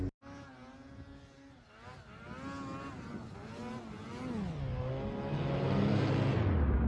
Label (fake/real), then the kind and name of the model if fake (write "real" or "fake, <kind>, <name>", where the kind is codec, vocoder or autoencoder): real